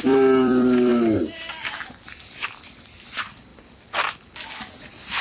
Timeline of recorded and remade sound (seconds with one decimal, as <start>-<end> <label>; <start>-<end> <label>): 0.0-0.9 remade; 0.9-2.5 recorded; 2.5-3.5 remade; 3.5-4.8 recorded; 4.8-5.2 remade